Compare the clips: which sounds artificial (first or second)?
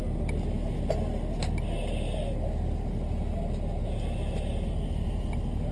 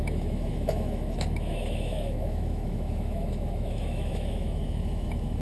second